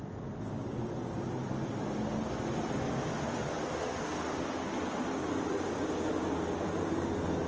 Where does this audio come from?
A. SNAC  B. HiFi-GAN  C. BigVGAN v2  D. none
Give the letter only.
D